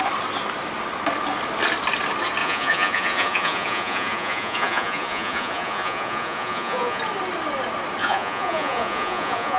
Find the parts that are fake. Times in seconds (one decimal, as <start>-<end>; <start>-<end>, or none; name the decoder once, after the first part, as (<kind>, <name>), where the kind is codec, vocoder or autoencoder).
2.4-7.0 (vocoder, Vocos); 8.0-9.6